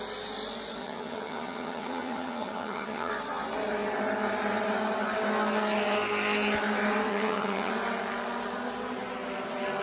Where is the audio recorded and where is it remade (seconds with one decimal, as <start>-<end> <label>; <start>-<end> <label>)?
0.0-0.8 recorded; 0.8-3.1 remade; 3.1-7.1 recorded; 7.1-7.7 remade; 7.7-9.8 recorded